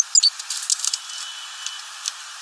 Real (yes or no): yes